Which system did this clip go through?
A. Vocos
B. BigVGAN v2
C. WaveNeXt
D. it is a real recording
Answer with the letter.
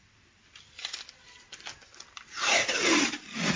B